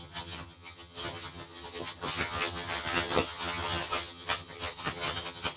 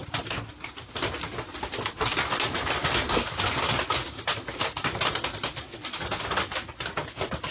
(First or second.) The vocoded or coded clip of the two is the first